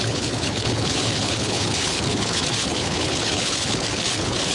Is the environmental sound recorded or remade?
remade